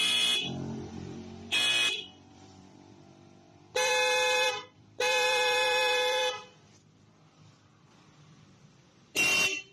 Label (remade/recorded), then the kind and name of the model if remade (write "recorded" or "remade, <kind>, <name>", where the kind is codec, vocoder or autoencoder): remade, vocoder, BigVGAN v2